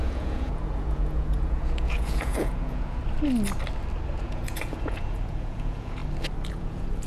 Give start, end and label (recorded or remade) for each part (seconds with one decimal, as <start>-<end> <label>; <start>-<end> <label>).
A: 0.0-3.0 remade; 3.0-4.2 recorded; 4.2-6.0 remade; 6.0-6.5 recorded; 6.5-7.1 remade